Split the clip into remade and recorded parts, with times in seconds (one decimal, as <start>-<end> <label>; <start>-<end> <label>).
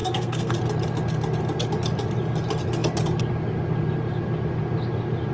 0.0-0.5 remade; 0.5-5.3 recorded